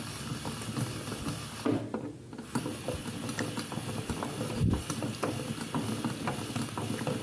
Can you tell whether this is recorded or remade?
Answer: recorded